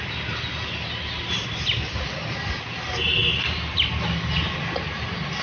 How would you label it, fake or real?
real